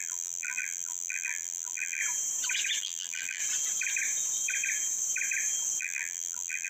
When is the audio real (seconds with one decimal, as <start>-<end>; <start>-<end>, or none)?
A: 2.0-2.8; 3.4-5.8